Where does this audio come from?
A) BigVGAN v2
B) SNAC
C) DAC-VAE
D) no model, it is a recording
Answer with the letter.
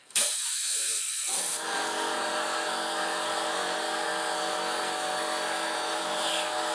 B